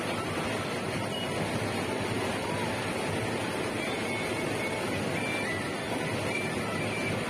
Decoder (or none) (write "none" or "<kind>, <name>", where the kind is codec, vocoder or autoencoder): none